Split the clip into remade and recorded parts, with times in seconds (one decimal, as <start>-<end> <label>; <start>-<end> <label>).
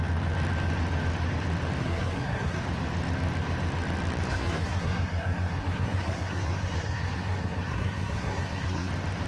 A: 0.0-1.8 recorded; 1.8-2.6 remade; 2.6-4.3 recorded; 4.3-8.9 remade; 8.9-9.3 recorded